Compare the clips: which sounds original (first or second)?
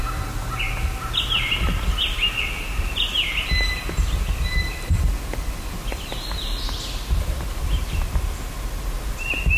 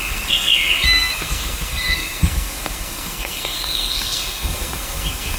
first